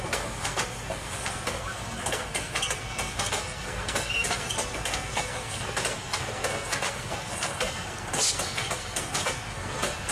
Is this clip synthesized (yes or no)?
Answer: yes